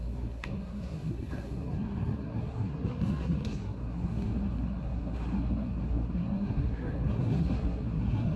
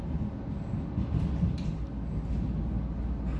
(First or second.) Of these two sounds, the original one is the second